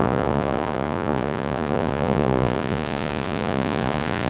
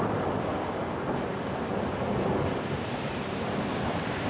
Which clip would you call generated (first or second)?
first